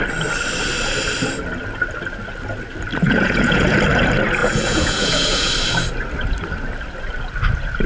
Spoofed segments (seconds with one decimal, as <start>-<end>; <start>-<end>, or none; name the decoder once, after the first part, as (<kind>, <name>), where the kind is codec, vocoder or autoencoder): 3.0-3.8 (vocoder, Vocos); 4.4-5.5